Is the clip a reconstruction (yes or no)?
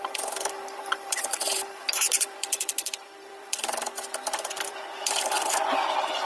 yes